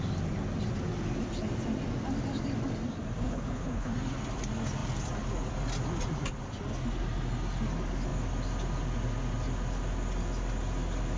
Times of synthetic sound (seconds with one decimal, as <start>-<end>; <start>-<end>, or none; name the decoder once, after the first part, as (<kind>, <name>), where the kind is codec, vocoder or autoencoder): 3.2-3.9 (codec, HILCodec)